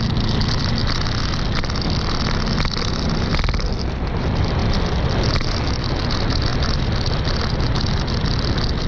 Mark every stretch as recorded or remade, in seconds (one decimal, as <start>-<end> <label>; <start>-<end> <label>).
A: 0.0-8.9 recorded